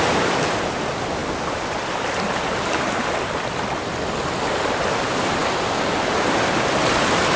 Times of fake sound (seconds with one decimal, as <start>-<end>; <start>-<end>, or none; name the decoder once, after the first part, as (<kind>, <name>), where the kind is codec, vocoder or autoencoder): none